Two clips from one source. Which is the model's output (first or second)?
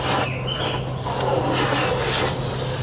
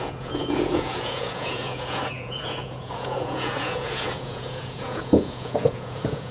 second